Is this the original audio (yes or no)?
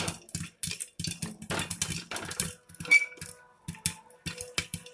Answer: yes